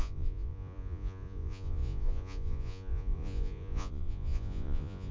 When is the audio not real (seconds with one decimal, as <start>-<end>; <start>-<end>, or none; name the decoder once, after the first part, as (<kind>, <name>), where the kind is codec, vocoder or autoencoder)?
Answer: 0.0-5.1 (vocoder, Vocos)